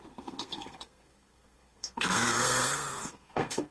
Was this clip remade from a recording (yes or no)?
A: yes